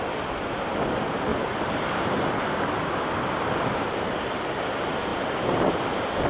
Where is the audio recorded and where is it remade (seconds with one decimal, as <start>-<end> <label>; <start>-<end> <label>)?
0.0-1.3 recorded; 1.3-2.2 remade; 2.2-6.3 recorded